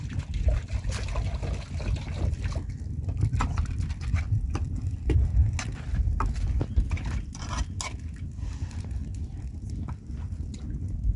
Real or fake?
real